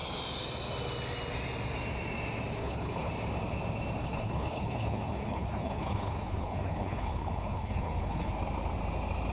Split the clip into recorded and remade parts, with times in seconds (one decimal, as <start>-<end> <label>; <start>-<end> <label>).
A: 0.0-2.6 recorded; 2.6-3.1 remade; 3.1-4.0 recorded; 4.0-8.3 remade; 8.3-9.3 recorded